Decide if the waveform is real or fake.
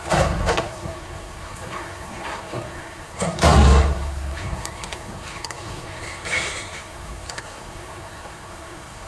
fake